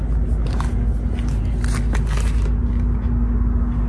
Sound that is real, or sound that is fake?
real